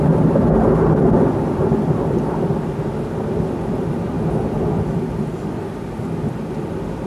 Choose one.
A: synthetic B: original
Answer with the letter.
B